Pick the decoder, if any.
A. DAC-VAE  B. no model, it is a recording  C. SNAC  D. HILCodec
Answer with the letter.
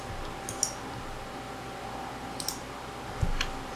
B